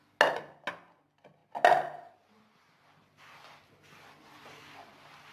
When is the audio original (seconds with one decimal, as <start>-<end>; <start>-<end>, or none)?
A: 0.0-5.3